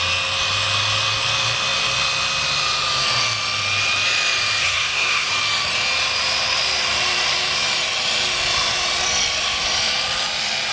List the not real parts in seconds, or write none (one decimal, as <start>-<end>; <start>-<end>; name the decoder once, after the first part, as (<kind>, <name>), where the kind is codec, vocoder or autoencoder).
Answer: 4.6-5.3 (codec, SNAC)